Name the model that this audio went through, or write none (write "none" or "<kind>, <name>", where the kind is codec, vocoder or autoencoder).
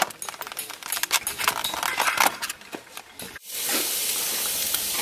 none